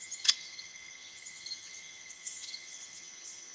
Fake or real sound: fake